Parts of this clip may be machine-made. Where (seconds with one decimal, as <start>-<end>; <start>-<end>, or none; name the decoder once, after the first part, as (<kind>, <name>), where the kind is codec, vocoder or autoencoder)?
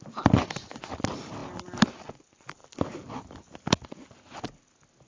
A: none